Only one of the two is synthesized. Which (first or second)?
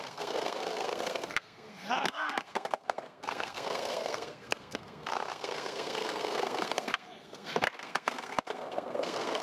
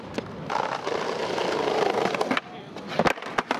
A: first